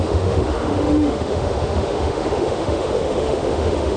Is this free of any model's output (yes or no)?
no